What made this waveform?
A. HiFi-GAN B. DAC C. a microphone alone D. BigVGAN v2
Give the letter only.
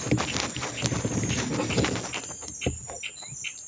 C